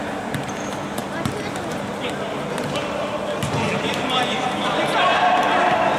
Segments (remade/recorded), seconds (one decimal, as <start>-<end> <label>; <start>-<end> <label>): 0.0-6.0 recorded

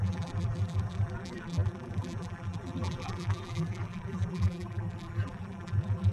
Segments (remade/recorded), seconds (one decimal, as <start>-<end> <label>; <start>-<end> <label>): 0.0-6.1 remade

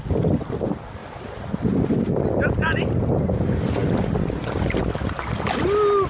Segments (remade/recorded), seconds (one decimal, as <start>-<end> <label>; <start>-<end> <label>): 0.0-6.1 recorded

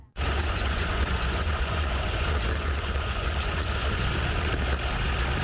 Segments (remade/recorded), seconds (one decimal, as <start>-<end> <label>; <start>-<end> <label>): 0.0-4.5 remade; 4.5-5.4 recorded

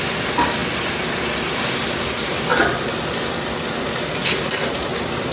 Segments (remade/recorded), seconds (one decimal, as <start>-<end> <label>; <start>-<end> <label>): 0.0-0.6 remade; 0.6-1.7 recorded; 1.7-2.5 remade; 2.5-4.8 recorded; 4.8-5.3 remade

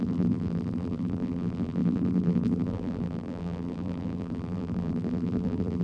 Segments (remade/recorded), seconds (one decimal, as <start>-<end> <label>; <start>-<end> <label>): 0.0-5.8 remade

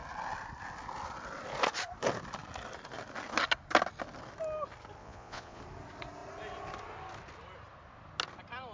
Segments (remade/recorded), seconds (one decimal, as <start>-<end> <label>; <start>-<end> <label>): 0.0-5.0 recorded; 5.0-5.6 remade; 5.6-8.7 recorded